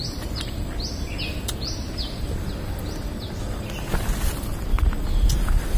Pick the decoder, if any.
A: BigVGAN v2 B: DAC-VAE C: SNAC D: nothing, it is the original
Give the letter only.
D